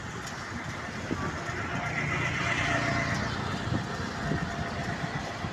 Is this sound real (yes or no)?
yes